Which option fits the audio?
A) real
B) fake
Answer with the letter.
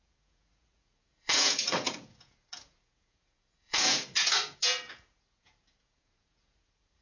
B